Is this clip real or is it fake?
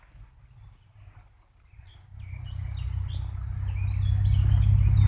real